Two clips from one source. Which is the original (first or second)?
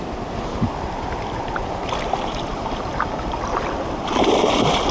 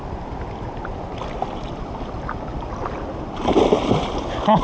second